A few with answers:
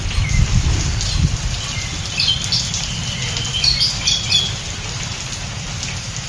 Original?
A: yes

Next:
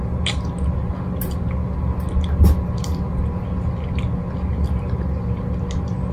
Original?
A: yes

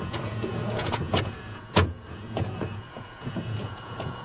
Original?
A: no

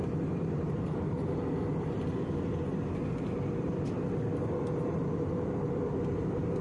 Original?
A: yes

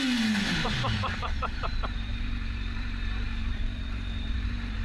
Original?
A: no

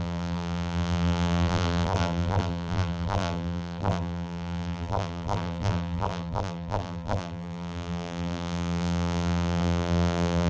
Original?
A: no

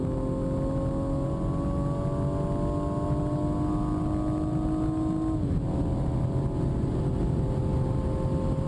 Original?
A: yes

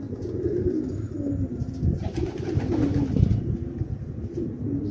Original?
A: yes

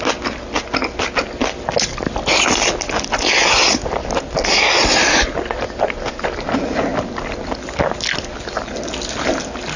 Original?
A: yes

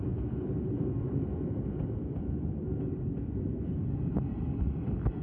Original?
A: yes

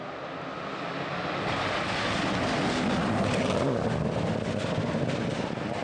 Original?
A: yes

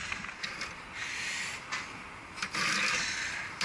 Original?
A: yes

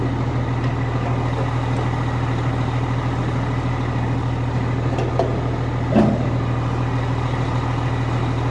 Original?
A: yes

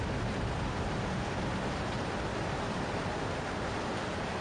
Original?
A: yes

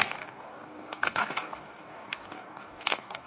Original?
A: no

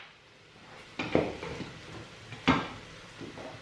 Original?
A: yes